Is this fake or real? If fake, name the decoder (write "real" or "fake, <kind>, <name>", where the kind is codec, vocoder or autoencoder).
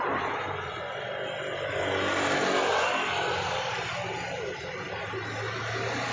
real